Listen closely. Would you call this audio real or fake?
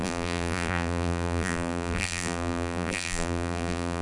fake